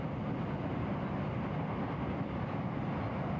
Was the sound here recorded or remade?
recorded